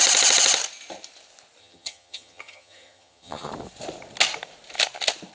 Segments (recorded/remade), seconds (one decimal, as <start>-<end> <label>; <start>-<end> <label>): 0.0-1.6 recorded; 1.6-3.5 remade; 3.5-5.3 recorded